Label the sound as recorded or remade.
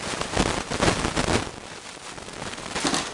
recorded